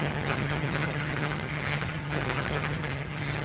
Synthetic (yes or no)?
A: yes